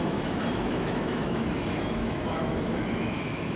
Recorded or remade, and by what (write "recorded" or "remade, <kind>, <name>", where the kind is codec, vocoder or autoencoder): remade, autoencoder, DAC-VAE